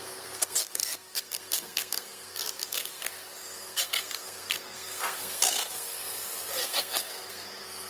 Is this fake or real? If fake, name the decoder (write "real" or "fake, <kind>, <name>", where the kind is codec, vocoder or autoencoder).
fake, codec, SNAC